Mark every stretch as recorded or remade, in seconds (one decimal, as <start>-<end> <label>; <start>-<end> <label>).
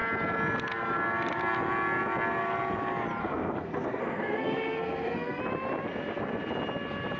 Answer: 0.0-3.2 recorded; 3.2-5.4 remade; 5.4-7.2 recorded